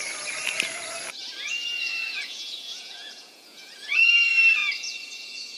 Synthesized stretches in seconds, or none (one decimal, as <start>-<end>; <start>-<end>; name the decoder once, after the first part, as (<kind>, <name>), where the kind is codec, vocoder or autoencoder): 1.2-4.1 (vocoder, Vocos); 4.6-5.6